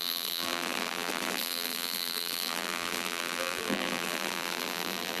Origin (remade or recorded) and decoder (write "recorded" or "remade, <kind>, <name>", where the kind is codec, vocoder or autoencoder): remade, vocoder, BigVGAN v2